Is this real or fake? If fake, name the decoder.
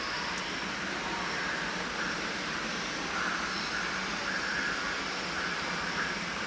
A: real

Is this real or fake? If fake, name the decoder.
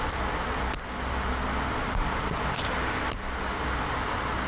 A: real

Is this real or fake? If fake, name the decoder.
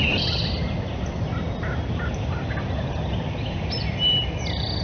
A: real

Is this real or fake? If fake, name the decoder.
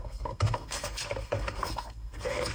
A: fake, codec, SNAC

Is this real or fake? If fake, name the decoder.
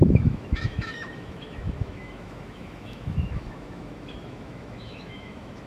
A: fake, autoencoder, DAC-VAE